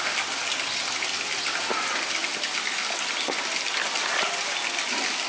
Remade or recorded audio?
recorded